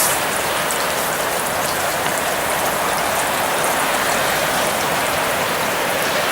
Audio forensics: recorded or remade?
remade